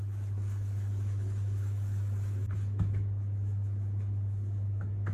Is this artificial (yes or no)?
yes